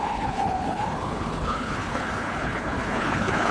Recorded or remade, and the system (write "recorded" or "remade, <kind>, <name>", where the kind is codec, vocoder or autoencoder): remade, codec, HILCodec